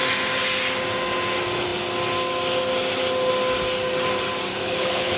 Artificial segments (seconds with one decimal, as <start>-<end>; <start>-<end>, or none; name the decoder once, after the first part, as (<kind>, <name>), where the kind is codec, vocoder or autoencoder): 4.5-5.2 (codec, HILCodec)